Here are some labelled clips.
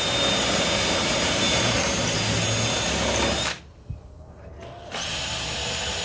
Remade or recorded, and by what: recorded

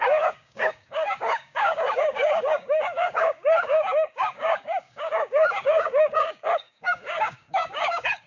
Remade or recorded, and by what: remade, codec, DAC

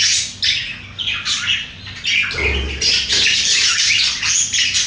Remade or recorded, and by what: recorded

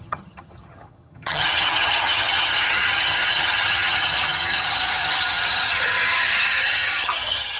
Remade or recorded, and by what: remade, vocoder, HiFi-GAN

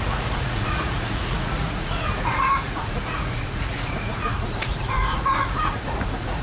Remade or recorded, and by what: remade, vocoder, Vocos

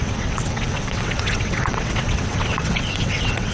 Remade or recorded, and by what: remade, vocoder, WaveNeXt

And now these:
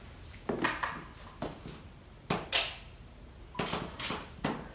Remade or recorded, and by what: recorded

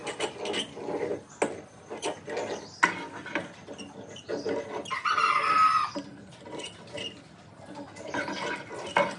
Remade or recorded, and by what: recorded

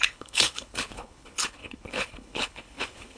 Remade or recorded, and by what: remade, codec, HILCodec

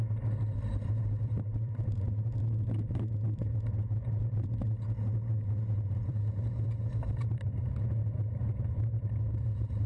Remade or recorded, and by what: remade, vocoder, BigVGAN v2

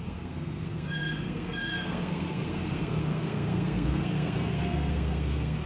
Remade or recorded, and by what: remade, codec, SNAC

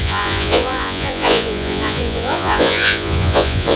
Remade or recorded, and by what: remade, vocoder, Vocos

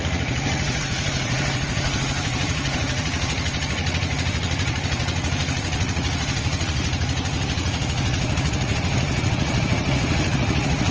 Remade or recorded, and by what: remade, vocoder, Vocos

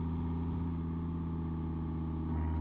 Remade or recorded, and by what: recorded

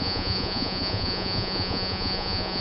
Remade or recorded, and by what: remade, vocoder, Vocos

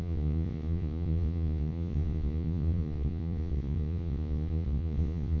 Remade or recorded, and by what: remade, vocoder, Vocos